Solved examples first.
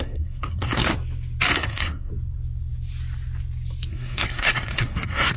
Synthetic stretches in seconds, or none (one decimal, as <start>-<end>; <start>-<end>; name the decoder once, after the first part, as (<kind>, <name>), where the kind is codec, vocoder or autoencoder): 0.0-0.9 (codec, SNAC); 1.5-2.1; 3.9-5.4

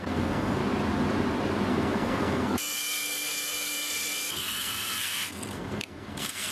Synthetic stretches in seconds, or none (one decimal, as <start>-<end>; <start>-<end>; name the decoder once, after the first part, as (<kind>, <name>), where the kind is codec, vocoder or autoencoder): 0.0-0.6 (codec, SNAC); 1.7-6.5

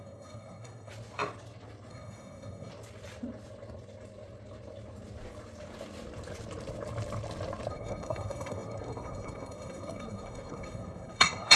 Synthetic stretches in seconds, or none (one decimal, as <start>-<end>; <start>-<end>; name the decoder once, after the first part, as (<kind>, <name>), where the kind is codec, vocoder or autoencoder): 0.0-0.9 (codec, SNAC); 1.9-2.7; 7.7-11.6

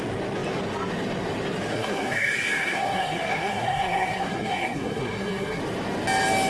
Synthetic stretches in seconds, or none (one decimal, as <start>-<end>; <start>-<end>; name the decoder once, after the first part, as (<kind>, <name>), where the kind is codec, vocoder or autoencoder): 1.7-5.6 (codec, SNAC)

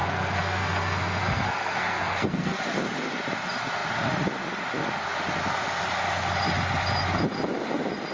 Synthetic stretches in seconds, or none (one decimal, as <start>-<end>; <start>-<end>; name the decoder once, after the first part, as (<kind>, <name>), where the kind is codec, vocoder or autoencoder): 0.0-2.6 (codec, SNAC)

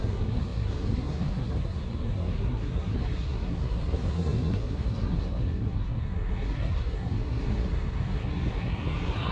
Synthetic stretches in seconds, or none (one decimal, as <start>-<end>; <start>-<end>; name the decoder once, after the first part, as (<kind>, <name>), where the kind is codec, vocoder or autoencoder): 0.0-9.3 (codec, SNAC)